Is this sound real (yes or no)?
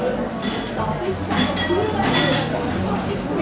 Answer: yes